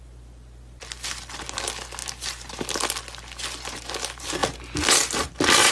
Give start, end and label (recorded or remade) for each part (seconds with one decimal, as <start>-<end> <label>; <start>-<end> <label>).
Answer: 0.0-5.7 recorded